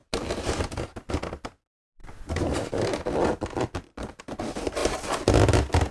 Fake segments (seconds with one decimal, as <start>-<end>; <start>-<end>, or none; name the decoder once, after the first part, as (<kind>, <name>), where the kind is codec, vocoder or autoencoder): 0.0-0.6 (vocoder, BigVGAN v2); 2.0-4.2